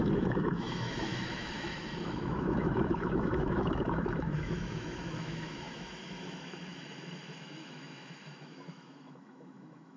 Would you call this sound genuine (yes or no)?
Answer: no